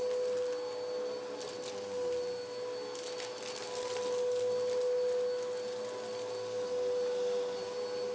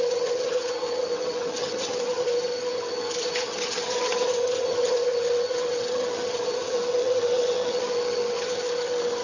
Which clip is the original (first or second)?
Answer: first